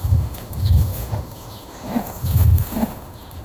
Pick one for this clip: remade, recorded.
remade